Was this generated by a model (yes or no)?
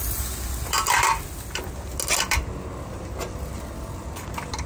no